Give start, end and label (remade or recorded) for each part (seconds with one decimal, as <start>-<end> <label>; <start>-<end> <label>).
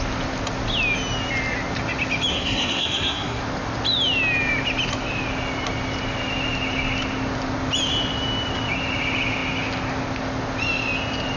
0.0-2.3 recorded; 2.3-3.4 remade; 3.4-11.4 recorded